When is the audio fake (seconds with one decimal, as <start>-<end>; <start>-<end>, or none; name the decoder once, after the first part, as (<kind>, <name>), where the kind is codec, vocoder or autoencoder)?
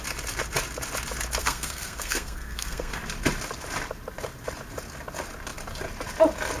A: 1.4-3.0 (codec, SNAC)